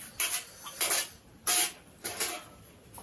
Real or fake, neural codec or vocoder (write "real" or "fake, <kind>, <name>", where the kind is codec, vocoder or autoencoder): real